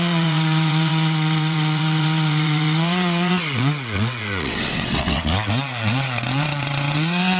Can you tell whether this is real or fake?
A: fake